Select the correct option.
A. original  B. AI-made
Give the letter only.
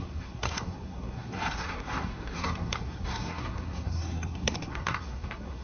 B